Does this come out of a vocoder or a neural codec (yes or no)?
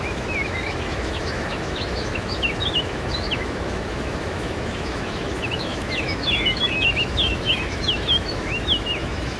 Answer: yes